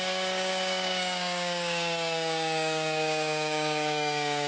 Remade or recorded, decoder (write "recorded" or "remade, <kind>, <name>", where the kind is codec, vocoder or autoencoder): remade, codec, DAC